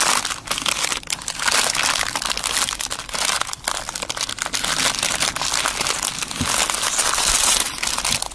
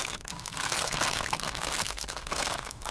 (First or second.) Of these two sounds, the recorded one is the first